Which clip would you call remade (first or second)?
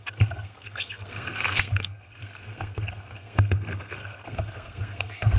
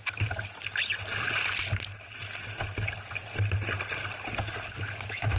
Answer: first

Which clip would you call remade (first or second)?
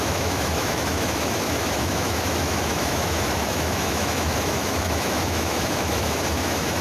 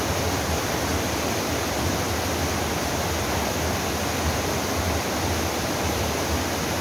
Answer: first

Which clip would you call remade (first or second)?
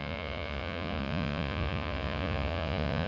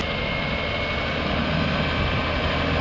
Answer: first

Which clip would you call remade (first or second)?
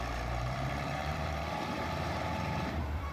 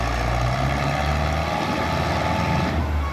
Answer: first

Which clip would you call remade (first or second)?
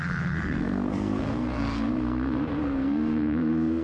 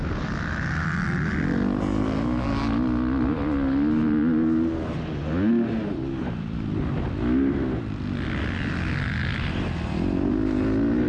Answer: first